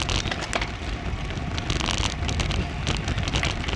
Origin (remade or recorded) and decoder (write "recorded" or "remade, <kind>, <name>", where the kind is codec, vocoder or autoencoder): recorded